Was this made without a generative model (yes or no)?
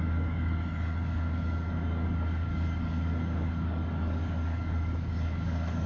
no